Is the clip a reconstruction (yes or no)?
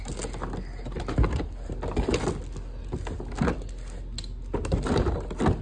no